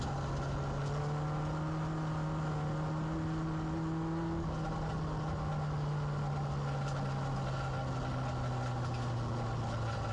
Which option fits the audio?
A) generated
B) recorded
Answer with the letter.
B